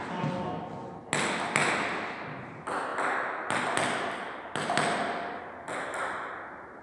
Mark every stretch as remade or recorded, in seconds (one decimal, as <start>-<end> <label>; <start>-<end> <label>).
0.0-6.8 recorded